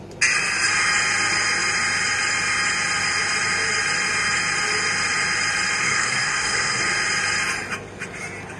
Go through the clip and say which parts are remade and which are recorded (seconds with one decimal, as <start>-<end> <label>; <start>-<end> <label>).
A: 0.0-5.8 recorded; 5.8-6.8 remade; 6.8-8.6 recorded